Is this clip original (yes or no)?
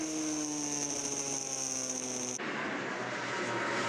yes